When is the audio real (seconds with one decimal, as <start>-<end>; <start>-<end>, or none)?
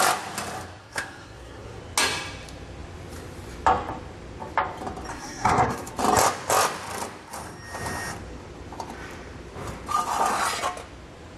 0.0-0.8; 1.8-5.1; 5.9-11.4